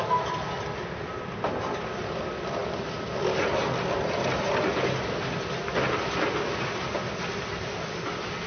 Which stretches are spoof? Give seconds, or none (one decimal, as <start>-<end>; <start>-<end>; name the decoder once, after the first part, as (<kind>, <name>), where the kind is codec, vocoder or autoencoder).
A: none